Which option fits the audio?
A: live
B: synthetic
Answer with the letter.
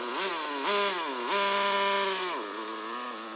A